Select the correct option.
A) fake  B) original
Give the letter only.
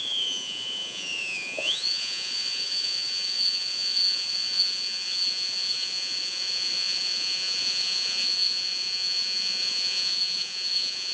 A